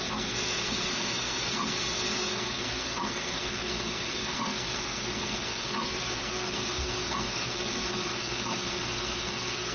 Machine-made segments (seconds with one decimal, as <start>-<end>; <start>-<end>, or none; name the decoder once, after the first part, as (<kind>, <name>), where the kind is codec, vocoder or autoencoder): 0.0-9.7 (codec, SNAC)